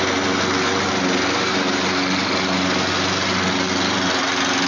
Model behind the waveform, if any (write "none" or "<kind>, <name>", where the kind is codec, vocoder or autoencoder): none